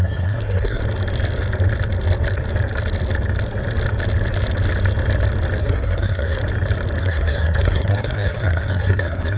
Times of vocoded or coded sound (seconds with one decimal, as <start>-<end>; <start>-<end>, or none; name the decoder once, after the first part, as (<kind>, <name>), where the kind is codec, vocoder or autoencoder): 0.0-0.8 (codec, SNAC); 5.6-6.4; 7.0-9.4